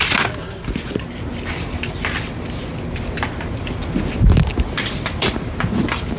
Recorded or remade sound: recorded